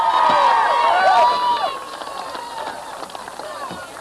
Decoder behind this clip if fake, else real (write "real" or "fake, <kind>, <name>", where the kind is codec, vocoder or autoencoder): real